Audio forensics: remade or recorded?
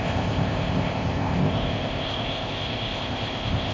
remade